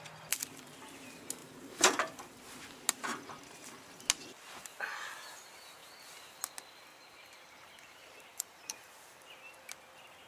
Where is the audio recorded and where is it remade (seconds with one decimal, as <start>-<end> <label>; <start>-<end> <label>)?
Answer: 0.0-1.4 recorded; 1.4-2.6 remade; 2.6-6.9 recorded; 6.9-9.3 remade; 9.3-10.3 recorded